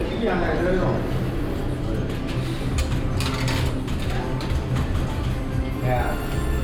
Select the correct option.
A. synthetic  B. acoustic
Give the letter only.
B